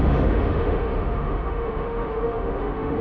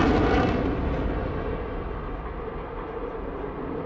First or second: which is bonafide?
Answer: second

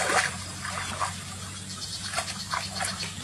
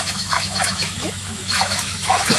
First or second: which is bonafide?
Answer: first